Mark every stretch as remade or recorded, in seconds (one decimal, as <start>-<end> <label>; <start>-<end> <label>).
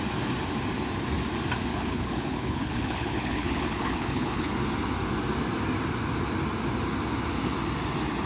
0.0-1.7 recorded; 1.7-4.5 remade; 4.5-8.3 recorded